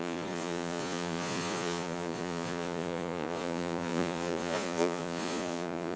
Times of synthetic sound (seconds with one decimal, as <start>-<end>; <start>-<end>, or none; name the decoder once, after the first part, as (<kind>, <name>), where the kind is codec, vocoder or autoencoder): 0.0-6.0 (vocoder, Vocos)